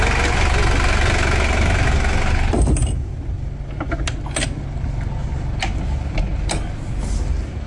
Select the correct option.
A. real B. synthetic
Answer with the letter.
A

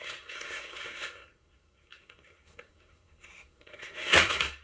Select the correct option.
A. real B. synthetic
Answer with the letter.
B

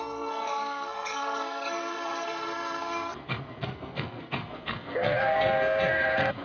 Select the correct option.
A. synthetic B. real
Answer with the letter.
A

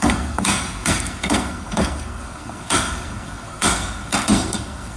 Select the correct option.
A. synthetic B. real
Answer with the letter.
A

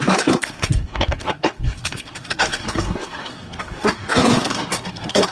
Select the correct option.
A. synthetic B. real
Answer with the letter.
A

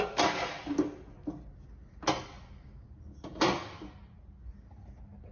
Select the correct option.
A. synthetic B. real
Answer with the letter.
B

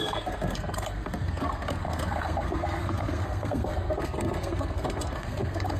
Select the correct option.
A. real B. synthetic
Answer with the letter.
B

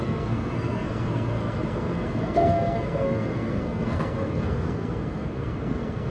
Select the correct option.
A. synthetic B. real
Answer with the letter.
A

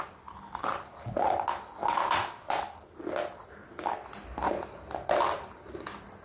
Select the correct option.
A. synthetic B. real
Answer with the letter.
B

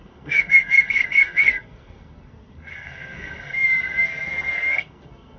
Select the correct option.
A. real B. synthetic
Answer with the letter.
B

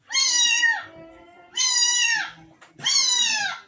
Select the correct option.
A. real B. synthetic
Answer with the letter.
A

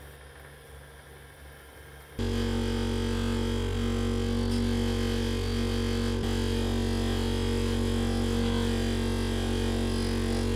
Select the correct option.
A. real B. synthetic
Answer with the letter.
A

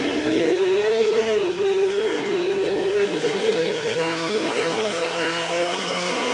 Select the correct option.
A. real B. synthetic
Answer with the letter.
B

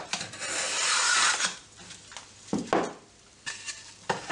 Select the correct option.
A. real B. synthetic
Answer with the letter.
A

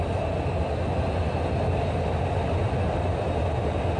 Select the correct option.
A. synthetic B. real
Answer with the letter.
B